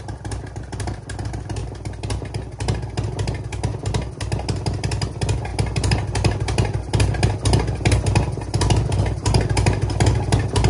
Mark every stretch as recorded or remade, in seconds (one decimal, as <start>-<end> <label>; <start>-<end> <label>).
0.0-10.7 recorded